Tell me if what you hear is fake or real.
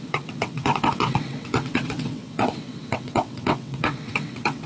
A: fake